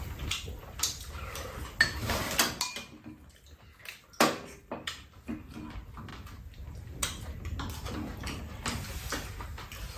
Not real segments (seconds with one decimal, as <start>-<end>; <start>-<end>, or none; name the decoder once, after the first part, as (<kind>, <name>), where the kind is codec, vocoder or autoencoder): none